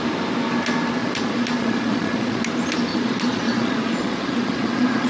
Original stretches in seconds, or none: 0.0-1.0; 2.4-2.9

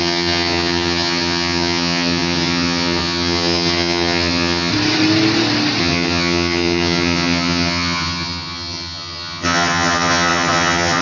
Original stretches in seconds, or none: 4.7-5.8

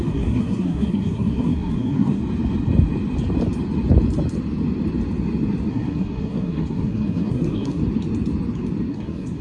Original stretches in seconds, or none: 2.2-5.7; 7.8-8.9

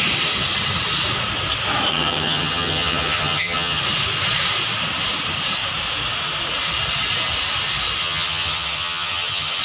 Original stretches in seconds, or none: 0.0-1.9; 3.8-8.0

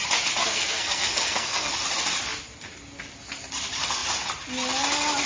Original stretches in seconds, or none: 0.0-0.4; 1.7-5.3

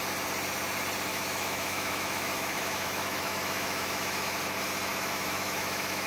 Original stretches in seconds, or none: 0.0-1.1; 4.4-4.9